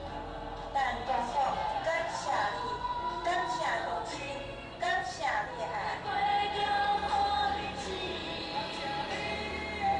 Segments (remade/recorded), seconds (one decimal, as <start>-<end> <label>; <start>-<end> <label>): 0.0-1.6 recorded; 1.6-5.5 remade; 5.5-10.0 recorded